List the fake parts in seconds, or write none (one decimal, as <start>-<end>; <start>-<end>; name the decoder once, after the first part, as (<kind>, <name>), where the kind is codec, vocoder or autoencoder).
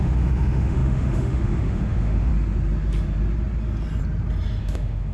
0.0-2.3 (autoencoder, DAC-VAE); 4.6-5.1